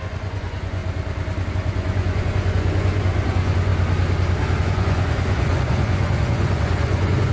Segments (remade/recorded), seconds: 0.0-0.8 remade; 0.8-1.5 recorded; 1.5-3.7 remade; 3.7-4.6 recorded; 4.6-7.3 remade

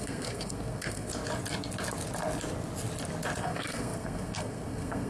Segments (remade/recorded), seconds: 0.0-1.1 remade; 1.1-3.4 recorded; 3.4-5.1 remade